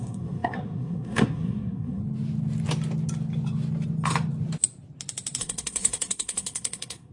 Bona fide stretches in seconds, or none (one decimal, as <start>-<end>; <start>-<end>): 2.0-5.4